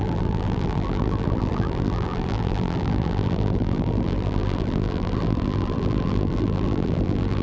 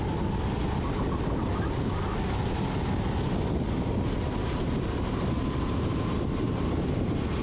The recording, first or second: second